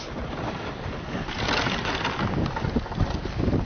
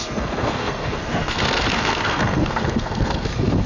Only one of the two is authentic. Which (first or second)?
first